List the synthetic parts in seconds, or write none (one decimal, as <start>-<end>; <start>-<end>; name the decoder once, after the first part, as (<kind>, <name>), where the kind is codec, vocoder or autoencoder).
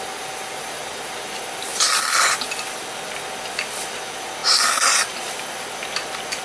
none